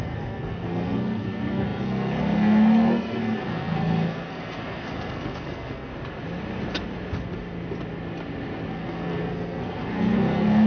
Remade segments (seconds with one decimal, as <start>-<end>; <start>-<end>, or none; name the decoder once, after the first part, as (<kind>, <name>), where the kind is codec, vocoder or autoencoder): 0.0-5.9 (codec, SNAC); 8.7-10.7